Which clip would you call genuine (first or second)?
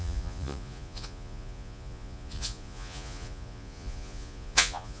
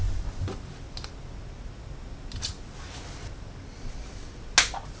second